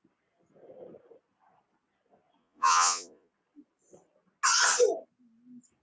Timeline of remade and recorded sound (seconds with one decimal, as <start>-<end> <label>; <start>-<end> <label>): 0.0-2.4 recorded; 2.4-3.3 remade; 3.3-5.8 recorded